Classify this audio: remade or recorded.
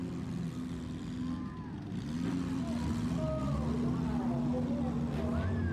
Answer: recorded